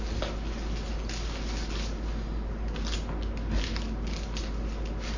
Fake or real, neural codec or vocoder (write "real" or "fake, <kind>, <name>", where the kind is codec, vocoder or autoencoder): real